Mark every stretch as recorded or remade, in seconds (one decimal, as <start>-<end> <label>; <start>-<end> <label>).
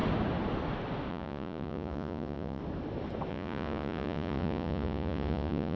0.0-1.1 recorded; 1.1-2.6 remade; 2.6-3.3 recorded; 3.3-5.8 remade